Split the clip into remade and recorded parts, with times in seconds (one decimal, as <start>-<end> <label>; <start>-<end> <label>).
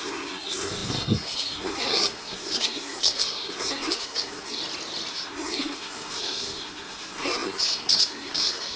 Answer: 0.0-4.6 remade; 4.6-5.1 recorded; 5.1-8.8 remade